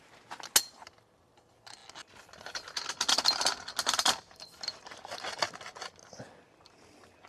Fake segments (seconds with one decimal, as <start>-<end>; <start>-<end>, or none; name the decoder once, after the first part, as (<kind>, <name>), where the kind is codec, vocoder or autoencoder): none